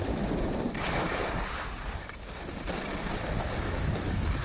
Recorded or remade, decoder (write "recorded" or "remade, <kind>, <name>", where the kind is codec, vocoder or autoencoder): recorded